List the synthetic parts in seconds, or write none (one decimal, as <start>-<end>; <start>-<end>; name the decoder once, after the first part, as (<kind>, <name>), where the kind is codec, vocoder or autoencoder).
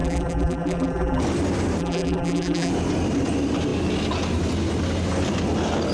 0.0-1.2 (vocoder, BigVGAN v2); 1.8-2.7